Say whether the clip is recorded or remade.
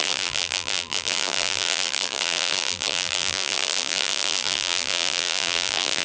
remade